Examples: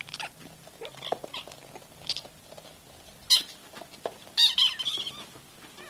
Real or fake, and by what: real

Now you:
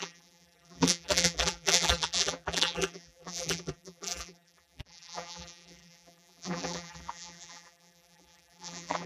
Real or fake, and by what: fake, vocoder, BigVGAN v2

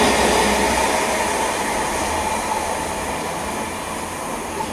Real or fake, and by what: real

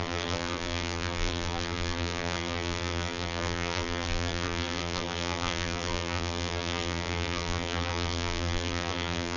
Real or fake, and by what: fake, vocoder, BigVGAN v2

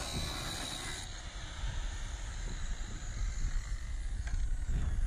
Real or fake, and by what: real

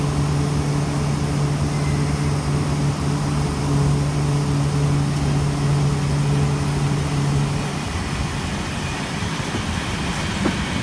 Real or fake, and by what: real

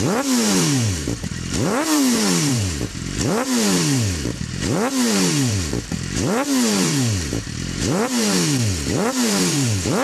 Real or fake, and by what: fake, vocoder, BigVGAN v2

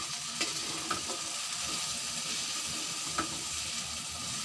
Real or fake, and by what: fake, vocoder, BigVGAN v2